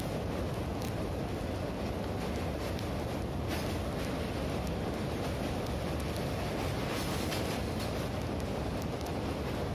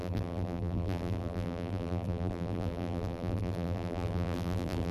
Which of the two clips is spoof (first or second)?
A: second